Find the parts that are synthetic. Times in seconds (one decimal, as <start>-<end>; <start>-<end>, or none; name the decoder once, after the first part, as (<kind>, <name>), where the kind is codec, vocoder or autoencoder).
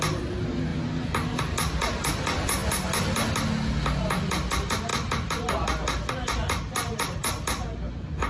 none